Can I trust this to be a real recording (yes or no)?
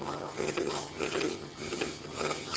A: no